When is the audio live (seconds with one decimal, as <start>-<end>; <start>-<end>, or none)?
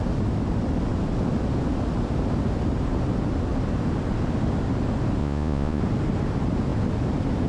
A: 0.0-5.2; 5.8-7.5